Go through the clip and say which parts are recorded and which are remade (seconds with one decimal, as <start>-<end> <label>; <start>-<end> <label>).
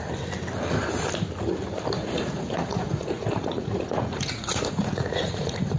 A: 0.0-2.0 recorded; 2.0-5.8 remade